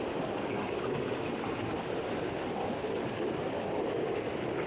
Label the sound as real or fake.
real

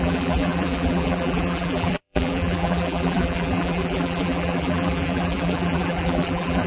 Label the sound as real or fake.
fake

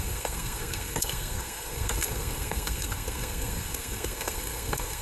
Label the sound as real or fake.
fake